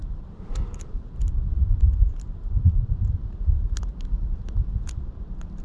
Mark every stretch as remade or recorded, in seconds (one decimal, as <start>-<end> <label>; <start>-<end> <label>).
0.0-5.6 recorded

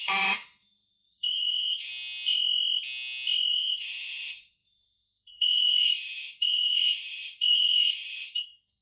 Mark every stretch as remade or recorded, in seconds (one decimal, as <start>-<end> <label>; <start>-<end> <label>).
0.0-1.9 remade; 1.9-3.5 recorded; 3.5-8.8 remade

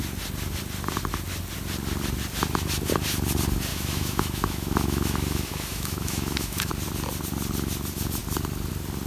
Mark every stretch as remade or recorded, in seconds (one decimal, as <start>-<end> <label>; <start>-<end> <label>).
0.0-3.7 recorded; 3.7-6.7 remade; 6.7-9.1 recorded

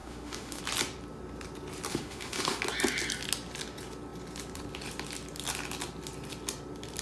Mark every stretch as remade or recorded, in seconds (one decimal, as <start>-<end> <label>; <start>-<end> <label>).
0.0-0.6 remade; 0.6-1.9 recorded; 1.9-2.6 remade; 2.6-7.0 recorded

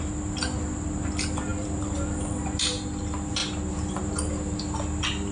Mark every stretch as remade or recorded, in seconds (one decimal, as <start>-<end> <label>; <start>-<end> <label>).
0.0-5.3 recorded

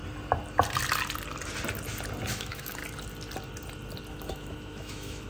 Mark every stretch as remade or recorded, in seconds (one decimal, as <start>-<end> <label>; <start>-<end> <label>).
0.0-2.3 recorded; 2.3-2.8 remade; 2.8-4.1 recorded; 4.1-5.3 remade